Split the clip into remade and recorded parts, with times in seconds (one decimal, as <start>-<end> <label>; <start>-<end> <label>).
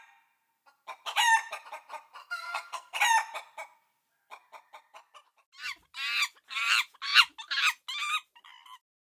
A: 0.0-2.2 recorded; 2.2-3.0 remade; 3.0-9.1 recorded